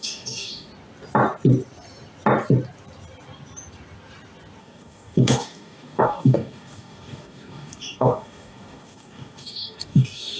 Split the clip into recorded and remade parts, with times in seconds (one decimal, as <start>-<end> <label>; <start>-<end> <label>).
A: 0.0-0.7 remade; 0.7-4.6 recorded; 4.6-10.4 remade